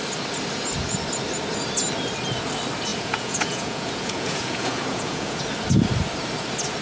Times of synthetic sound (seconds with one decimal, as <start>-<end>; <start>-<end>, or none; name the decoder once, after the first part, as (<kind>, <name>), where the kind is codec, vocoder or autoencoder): 2.9-5.4 (vocoder, Vocos)

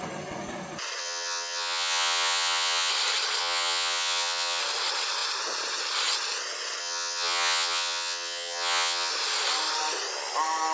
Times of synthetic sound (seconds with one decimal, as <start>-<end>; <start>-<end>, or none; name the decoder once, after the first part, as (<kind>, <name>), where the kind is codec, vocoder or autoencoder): 1.0-2.9 (vocoder, HiFi-GAN); 3.4-4.6; 6.8-9.1